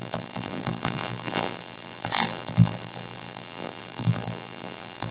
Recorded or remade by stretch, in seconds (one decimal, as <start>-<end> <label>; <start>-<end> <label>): 0.0-5.1 remade